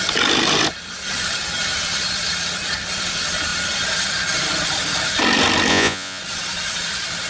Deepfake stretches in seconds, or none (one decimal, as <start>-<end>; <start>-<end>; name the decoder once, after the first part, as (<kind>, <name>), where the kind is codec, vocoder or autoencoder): 5.7-6.2 (vocoder, Vocos)